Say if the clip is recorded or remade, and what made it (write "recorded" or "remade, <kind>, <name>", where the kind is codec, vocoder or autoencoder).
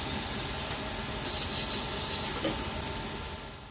recorded